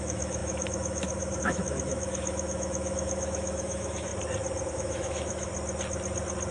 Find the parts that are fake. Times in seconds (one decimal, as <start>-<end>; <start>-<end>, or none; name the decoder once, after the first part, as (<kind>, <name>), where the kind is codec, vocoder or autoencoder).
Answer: 0.0-4.1 (autoencoder, DAC-VAE); 4.7-5.5